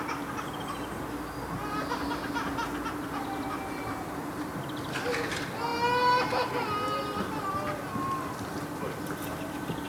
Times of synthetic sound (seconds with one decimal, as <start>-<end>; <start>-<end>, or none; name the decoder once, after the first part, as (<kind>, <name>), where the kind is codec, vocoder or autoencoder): none